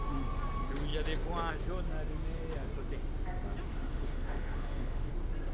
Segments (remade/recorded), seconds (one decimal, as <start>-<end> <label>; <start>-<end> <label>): 0.0-3.7 recorded; 3.7-5.1 remade; 5.1-5.5 recorded

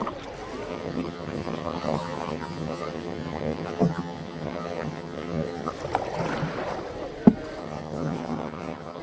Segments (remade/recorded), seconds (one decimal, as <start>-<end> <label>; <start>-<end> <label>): 0.0-0.7 recorded; 0.7-5.7 remade; 5.7-7.6 recorded; 7.6-9.0 remade

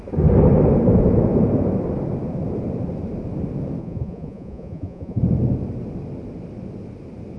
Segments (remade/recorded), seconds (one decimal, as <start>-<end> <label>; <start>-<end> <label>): 0.0-3.8 recorded; 3.8-5.2 remade; 5.2-7.4 recorded

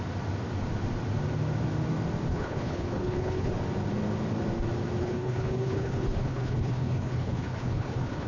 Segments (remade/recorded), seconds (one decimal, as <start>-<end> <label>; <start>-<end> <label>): 0.0-2.3 recorded; 2.3-3.5 remade; 3.5-5.0 recorded; 5.0-8.3 remade

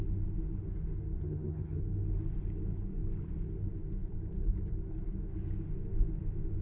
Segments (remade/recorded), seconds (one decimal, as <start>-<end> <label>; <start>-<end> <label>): 0.0-1.2 recorded; 1.2-1.8 remade; 1.8-6.6 recorded

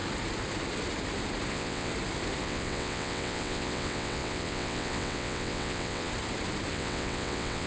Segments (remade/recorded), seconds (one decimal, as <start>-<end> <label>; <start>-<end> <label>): 0.0-1.5 recorded; 1.5-1.9 remade; 1.9-2.4 recorded; 2.4-6.1 remade; 6.1-6.7 recorded; 6.7-7.7 remade

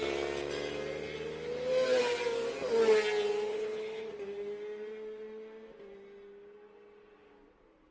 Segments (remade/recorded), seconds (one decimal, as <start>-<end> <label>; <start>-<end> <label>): 0.0-3.5 recorded; 3.5-4.1 remade; 4.1-7.9 recorded